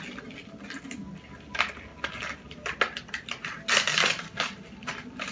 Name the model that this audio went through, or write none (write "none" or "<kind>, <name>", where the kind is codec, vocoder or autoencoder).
none